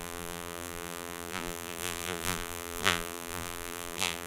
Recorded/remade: remade